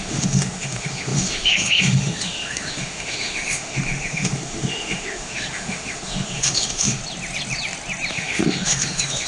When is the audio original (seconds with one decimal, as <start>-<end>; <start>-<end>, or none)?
7.0-8.1